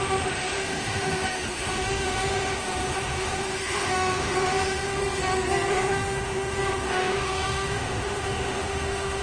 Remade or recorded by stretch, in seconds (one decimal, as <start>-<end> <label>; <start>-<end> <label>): 0.0-5.0 remade; 5.0-5.7 recorded; 5.7-9.2 remade